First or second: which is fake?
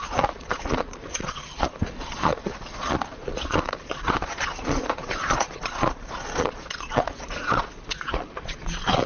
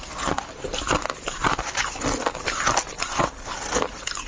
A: first